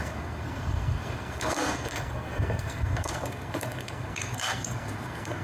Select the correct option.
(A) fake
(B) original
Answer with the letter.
A